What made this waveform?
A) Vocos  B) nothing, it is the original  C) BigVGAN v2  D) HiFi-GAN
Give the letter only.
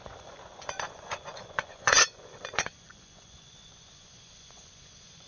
A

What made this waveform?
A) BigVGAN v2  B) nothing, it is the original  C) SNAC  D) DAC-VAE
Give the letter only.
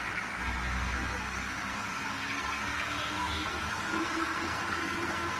C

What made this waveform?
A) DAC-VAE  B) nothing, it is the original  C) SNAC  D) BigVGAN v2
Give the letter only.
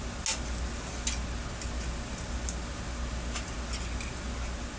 B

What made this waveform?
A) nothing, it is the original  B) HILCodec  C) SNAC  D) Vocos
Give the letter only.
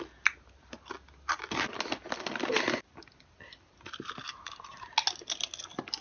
A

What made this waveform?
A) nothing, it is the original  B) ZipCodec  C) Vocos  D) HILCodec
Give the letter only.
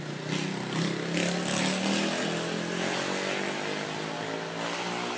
A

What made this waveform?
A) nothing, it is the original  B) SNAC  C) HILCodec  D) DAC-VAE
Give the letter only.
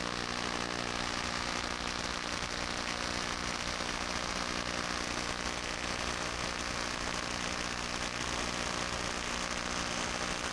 A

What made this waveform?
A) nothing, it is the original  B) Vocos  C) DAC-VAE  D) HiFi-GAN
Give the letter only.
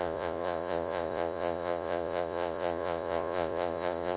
B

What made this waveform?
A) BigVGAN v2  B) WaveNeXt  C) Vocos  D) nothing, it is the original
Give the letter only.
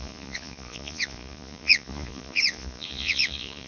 C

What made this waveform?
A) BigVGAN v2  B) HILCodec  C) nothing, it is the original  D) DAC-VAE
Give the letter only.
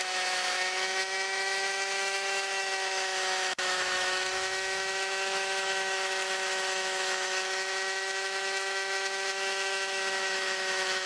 D